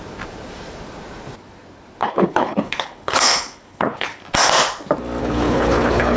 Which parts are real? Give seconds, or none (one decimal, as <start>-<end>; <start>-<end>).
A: 0.0-2.0; 4.2-5.2